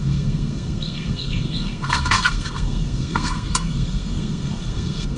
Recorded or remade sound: remade